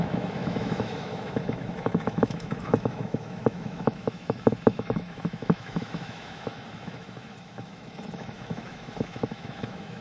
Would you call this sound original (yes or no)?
no